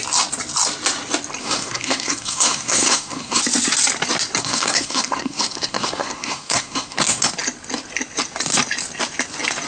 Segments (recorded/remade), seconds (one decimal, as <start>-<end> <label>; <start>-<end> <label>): 0.0-1.4 recorded; 1.4-3.4 remade; 3.4-4.4 recorded; 4.4-7.3 remade; 7.3-9.7 recorded